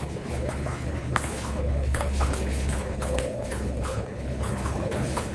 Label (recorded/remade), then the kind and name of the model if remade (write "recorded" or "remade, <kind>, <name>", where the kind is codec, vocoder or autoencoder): remade, codec, HILCodec